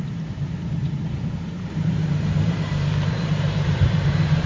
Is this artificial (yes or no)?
yes